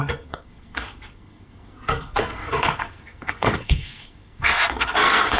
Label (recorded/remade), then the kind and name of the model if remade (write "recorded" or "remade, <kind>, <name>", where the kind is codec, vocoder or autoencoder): remade, codec, SNAC